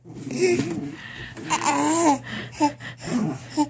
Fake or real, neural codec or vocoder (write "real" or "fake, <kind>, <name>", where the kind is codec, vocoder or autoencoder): real